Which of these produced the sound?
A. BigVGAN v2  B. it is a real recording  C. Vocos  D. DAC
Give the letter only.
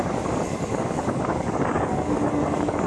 D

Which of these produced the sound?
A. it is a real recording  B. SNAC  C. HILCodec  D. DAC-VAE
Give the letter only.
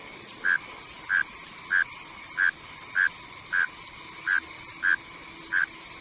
A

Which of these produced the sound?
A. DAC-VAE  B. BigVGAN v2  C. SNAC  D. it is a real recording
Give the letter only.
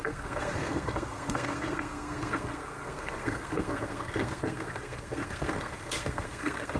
C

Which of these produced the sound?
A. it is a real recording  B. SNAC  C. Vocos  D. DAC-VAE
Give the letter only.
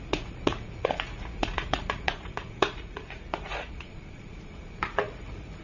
C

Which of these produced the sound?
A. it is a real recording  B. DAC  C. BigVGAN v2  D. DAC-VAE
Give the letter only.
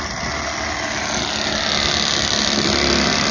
A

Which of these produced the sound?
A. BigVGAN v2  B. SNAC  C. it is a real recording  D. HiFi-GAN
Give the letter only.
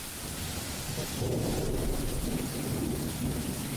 C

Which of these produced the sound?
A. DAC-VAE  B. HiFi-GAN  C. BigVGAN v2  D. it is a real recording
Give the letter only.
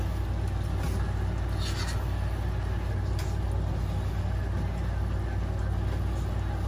D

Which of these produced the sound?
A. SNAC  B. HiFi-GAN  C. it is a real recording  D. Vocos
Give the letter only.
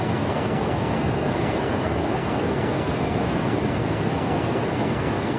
A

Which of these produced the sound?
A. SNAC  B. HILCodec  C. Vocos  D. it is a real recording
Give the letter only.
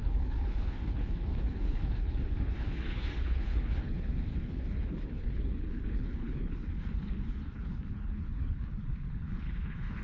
B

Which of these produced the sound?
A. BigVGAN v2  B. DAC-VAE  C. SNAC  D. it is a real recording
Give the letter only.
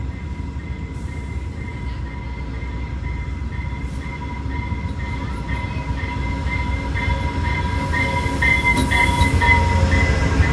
D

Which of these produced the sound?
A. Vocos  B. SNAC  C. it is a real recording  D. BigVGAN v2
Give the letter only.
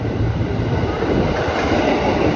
D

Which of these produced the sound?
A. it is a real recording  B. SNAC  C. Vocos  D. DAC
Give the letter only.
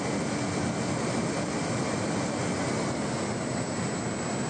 A